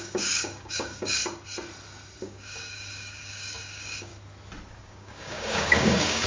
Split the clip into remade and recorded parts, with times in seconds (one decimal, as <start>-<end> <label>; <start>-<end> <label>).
0.0-1.2 remade; 1.2-2.2 recorded; 2.2-4.1 remade; 4.1-4.7 recorded; 4.7-6.3 remade

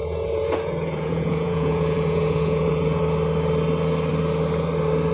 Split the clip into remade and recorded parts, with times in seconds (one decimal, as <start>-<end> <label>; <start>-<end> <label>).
0.0-3.0 remade; 3.0-5.1 recorded

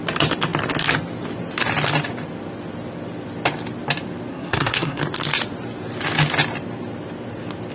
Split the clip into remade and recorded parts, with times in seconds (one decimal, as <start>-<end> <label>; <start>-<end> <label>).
0.0-4.3 recorded; 4.3-5.0 remade; 5.0-7.7 recorded